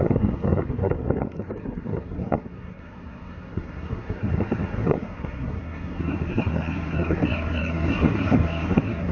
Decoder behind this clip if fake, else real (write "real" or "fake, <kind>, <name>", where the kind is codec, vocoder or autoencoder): fake, codec, SNAC